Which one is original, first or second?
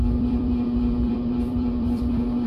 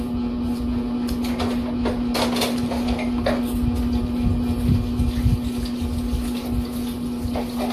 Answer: second